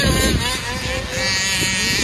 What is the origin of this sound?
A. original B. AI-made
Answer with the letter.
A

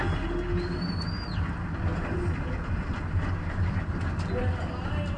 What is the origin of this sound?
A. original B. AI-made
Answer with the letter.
A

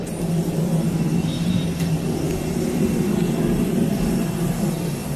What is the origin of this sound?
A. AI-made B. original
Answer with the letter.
B